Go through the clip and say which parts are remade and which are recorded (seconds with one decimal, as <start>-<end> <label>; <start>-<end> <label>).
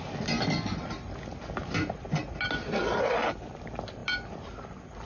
0.0-5.1 recorded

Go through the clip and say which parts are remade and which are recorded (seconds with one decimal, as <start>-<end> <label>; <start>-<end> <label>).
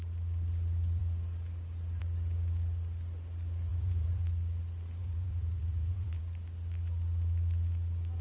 0.0-3.7 recorded; 3.7-4.2 remade; 4.2-5.0 recorded; 5.0-6.2 remade; 6.2-8.2 recorded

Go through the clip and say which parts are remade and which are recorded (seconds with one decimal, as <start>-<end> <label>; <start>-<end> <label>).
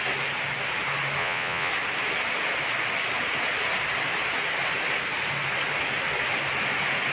0.0-1.2 recorded; 1.2-1.7 remade; 1.7-7.1 recorded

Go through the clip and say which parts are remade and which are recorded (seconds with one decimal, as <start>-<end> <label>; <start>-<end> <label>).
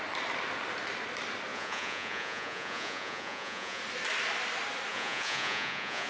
0.0-1.5 recorded; 1.5-3.8 remade; 3.8-4.9 recorded; 4.9-6.1 remade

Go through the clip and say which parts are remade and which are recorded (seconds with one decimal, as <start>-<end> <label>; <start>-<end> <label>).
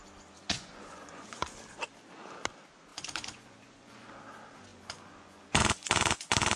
0.0-0.4 recorded; 0.4-1.6 remade; 1.6-2.9 recorded; 2.9-4.1 remade; 4.1-4.7 recorded; 4.7-6.6 remade